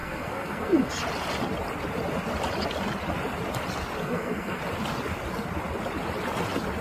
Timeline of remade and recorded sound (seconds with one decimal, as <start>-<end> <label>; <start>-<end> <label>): 0.0-0.9 remade; 0.9-4.0 recorded; 4.0-4.6 remade; 4.6-6.8 recorded